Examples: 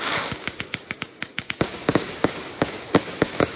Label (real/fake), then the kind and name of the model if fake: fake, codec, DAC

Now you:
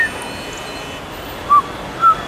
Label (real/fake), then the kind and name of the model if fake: real